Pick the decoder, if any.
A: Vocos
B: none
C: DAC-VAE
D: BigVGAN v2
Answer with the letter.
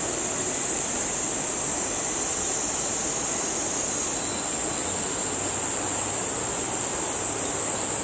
B